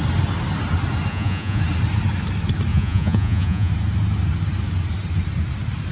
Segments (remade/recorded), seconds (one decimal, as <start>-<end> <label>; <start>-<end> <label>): 0.0-1.1 recorded; 1.1-1.6 remade; 1.6-2.7 recorded; 2.7-3.7 remade; 3.7-5.9 recorded